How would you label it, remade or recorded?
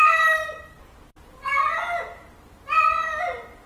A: recorded